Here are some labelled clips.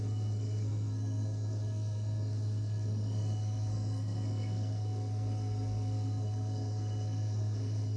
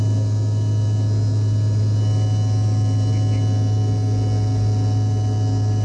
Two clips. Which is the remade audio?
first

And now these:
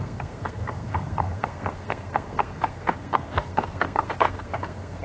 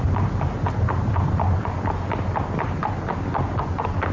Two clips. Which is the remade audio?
first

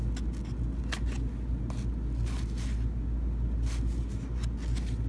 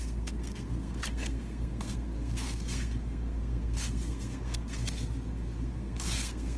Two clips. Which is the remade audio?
second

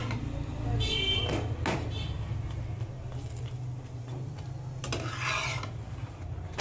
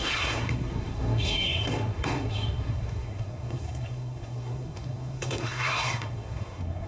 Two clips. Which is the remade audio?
second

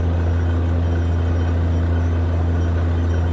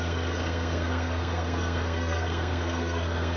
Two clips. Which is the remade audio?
second